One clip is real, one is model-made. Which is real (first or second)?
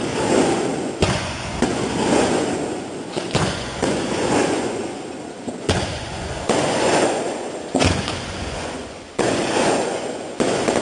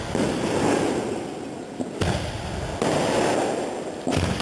second